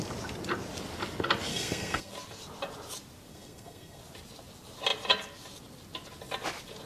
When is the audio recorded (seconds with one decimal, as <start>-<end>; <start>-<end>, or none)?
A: 0.0-1.5; 2.1-3.3; 4.0-6.9